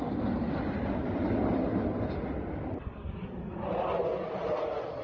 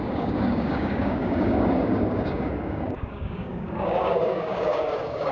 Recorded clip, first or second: first